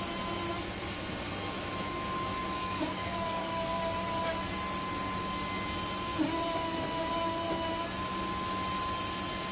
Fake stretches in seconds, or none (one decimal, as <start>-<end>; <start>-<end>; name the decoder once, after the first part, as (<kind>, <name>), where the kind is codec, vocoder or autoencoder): 2.3-3.8 (codec, DAC)